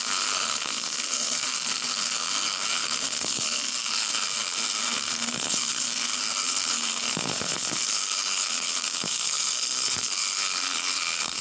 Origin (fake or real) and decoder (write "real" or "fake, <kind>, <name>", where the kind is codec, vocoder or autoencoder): fake, codec, SNAC